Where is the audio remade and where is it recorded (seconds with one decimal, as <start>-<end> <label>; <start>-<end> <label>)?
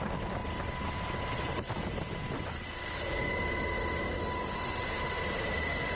0.0-6.0 recorded